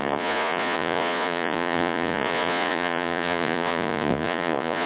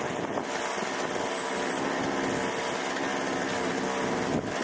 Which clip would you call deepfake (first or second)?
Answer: first